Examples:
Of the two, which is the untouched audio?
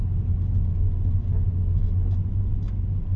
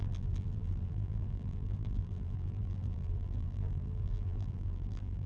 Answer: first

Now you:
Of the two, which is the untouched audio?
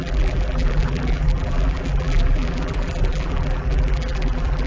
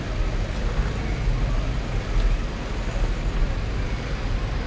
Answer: second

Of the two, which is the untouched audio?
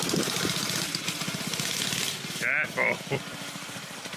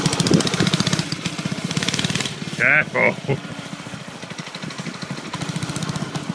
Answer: first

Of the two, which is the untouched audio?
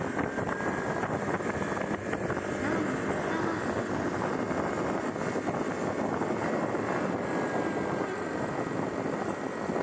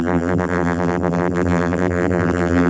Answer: first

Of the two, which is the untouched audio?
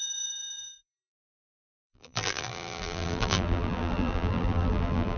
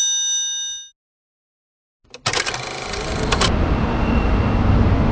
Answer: second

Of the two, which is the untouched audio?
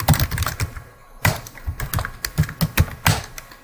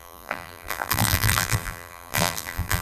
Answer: first